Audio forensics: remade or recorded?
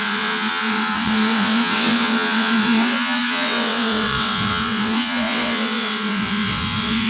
remade